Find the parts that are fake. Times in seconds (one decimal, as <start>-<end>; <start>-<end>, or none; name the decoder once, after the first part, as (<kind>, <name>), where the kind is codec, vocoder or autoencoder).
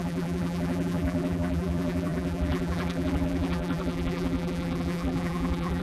0.0-5.8 (vocoder, BigVGAN v2)